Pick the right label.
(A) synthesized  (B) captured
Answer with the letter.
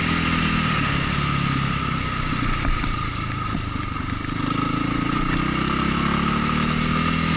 B